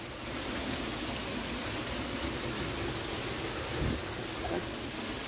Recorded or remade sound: recorded